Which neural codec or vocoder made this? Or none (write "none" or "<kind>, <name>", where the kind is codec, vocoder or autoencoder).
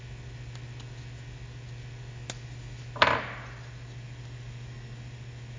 none